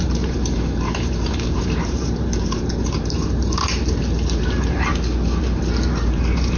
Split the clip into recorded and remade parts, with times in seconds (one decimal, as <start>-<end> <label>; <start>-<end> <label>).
0.0-4.9 remade; 4.9-5.4 recorded; 5.4-6.6 remade